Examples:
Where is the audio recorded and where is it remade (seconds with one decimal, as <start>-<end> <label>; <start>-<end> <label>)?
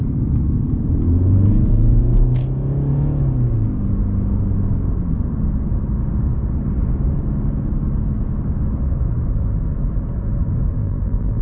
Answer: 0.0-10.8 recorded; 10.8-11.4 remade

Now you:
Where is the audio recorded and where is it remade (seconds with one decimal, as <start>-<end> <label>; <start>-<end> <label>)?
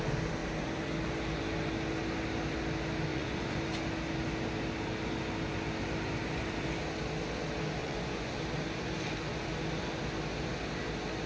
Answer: 0.0-3.1 recorded; 3.1-3.6 remade; 3.6-7.8 recorded; 7.8-8.4 remade; 8.4-11.3 recorded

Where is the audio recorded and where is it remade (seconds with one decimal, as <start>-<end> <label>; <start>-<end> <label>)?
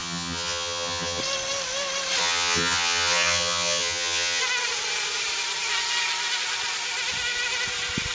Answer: 0.0-1.2 remade; 1.2-2.2 recorded; 2.2-4.4 remade; 4.4-8.1 recorded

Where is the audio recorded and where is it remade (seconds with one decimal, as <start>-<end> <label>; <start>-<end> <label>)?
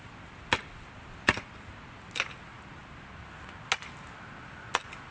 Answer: 0.0-5.1 recorded